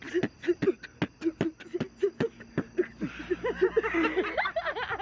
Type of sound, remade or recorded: recorded